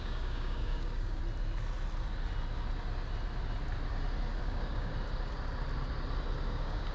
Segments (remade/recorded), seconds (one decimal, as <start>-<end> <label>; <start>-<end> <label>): 0.0-1.2 remade; 1.2-4.4 recorded; 4.4-4.9 remade; 4.9-6.5 recorded; 6.5-6.9 remade